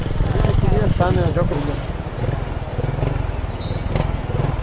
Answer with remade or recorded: recorded